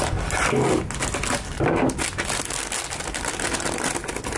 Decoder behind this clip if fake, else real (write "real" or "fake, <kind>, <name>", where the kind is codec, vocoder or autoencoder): real